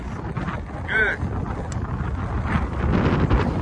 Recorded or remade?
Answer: recorded